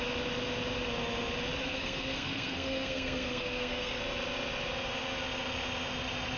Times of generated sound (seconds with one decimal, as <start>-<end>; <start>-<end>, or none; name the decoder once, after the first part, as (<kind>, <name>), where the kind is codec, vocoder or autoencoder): 1.6-4.0 (codec, SNAC)